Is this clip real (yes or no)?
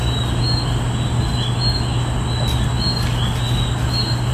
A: yes